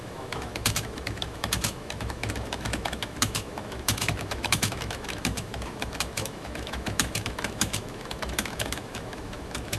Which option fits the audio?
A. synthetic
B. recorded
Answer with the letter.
A